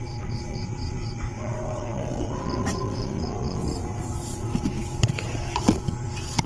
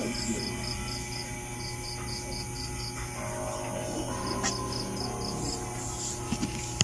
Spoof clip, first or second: first